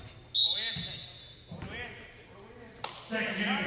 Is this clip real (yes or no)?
yes